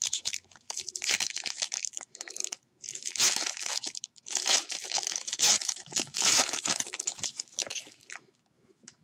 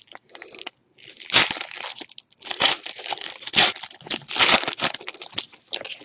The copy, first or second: first